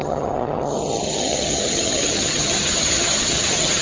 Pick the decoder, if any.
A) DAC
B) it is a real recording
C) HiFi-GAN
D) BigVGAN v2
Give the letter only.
C